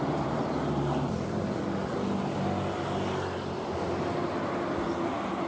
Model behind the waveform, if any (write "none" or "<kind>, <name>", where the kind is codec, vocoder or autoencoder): none